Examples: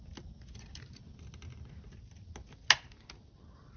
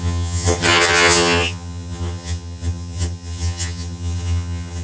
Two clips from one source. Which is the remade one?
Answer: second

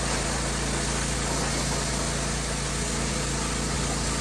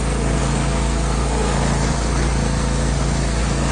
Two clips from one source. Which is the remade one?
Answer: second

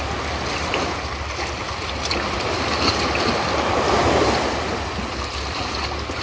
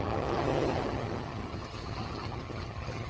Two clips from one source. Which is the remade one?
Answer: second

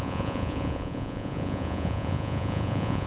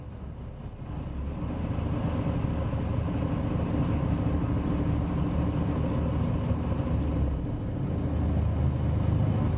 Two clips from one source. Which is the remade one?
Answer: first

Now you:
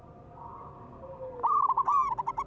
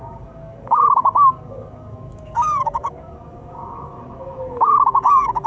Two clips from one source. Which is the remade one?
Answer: second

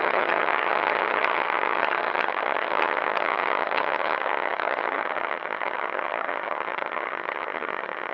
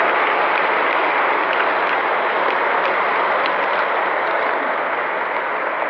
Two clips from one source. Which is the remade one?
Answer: first